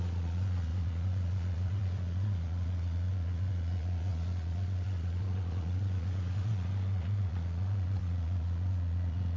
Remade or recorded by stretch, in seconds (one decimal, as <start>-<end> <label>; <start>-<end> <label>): 0.0-9.4 remade